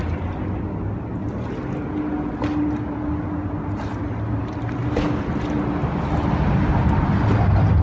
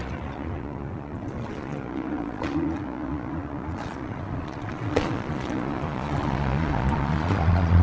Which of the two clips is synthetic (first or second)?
second